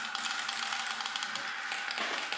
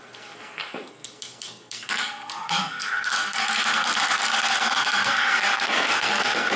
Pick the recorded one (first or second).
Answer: first